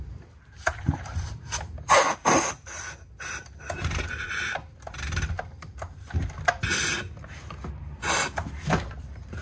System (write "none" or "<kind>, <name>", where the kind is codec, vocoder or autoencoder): none